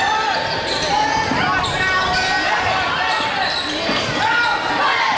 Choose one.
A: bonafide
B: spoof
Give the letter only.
A